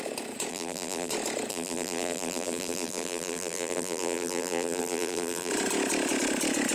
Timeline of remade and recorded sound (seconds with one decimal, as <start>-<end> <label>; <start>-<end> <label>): 0.0-0.5 recorded; 0.5-1.1 remade; 1.1-1.5 recorded; 1.5-5.5 remade; 5.5-6.7 recorded